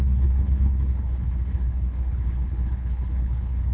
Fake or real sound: fake